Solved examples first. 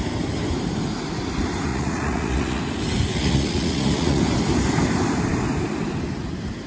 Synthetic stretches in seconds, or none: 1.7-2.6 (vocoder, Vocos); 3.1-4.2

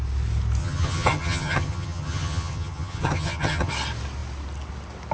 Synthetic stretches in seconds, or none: 0.6-3.7 (vocoder, HiFi-GAN)

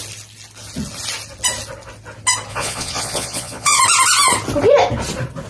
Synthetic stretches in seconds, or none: 2.5-3.8 (vocoder, Vocos)

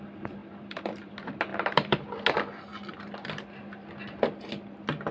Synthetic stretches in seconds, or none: 0.4-1.1 (vocoder, BigVGAN v2); 1.5-2.1

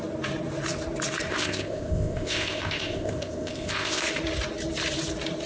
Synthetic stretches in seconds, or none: 1.3-4.0 (codec, ZipCodec)

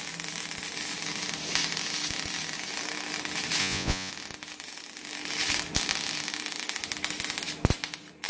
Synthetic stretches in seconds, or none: 3.6-4.1 (vocoder, Vocos)

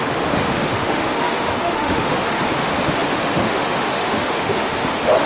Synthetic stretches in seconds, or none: 0.0-5.3 (autoencoder, DAC-VAE)

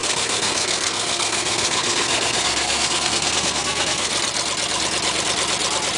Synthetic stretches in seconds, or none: 0.0-4.1 (codec, SNAC)